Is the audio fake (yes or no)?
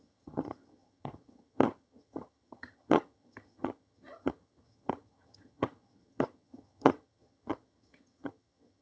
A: yes